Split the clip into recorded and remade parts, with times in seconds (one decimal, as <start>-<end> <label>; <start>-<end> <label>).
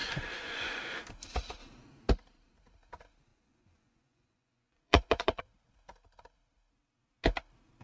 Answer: 0.0-1.0 remade; 1.0-3.3 recorded; 3.3-5.4 remade; 5.4-7.8 recorded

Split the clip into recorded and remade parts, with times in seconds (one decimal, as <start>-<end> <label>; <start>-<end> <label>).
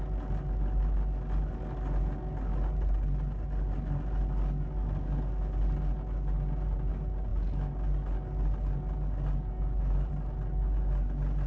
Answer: 0.0-11.5 recorded